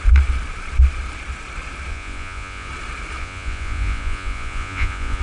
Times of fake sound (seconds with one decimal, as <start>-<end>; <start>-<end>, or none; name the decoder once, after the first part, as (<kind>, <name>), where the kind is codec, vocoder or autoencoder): 1.9-2.7 (vocoder, Vocos); 3.2-5.2